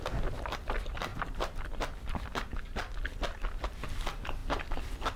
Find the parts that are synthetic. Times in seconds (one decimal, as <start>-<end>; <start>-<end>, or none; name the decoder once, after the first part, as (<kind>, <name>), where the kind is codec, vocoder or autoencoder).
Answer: none